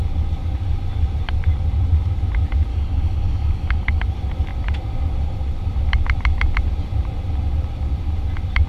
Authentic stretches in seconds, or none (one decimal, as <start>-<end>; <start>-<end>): 0.0-2.7; 4.0-8.7